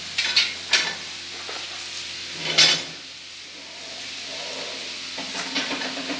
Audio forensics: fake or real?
real